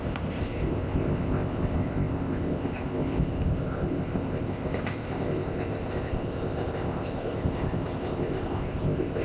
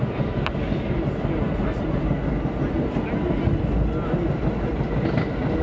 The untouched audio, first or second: second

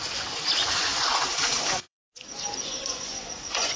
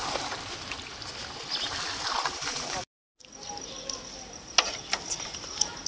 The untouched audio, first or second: second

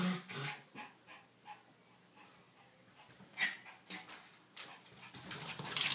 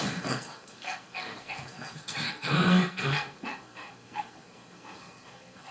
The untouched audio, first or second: first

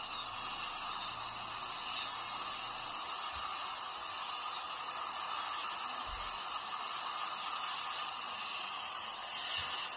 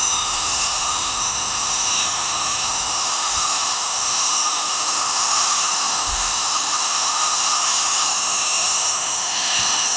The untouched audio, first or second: first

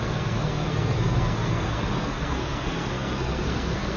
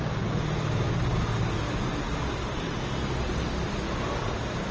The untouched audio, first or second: second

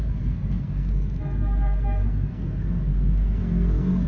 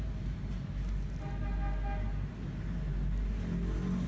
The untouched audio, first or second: second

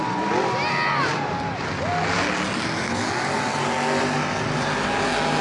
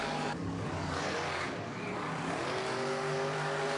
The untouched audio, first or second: first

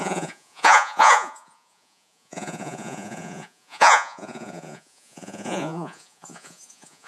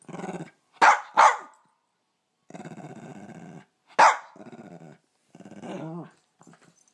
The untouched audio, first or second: second